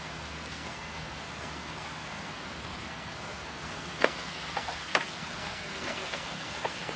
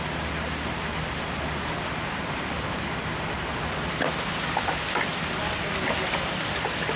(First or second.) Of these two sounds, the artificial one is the first